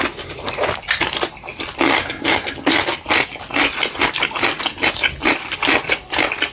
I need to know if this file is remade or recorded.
recorded